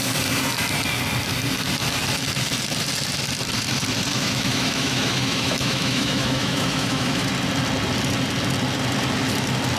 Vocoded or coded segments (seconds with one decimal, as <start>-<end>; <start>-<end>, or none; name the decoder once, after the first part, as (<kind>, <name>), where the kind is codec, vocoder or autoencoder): 4.1-7.3 (autoencoder, DAC-VAE)